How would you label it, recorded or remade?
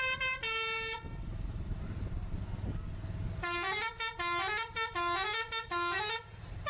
recorded